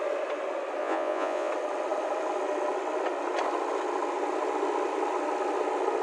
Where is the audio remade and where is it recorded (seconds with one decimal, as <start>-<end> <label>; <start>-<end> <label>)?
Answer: 0.0-0.8 recorded; 0.8-1.5 remade; 1.5-6.0 recorded